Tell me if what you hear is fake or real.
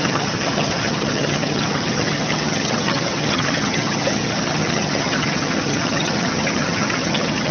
fake